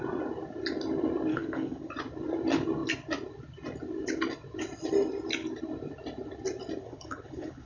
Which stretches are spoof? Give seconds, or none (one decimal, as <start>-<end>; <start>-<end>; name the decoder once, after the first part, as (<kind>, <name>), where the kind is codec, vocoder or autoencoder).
1.3-1.9 (codec, HILCodec); 6.8-7.7